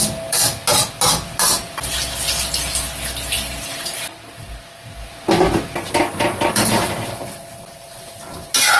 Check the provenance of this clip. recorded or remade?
recorded